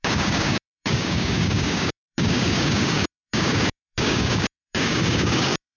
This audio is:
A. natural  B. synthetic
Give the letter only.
B